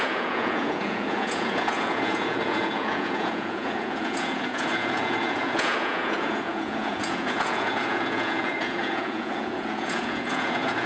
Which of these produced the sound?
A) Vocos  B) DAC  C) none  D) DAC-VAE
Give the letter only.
A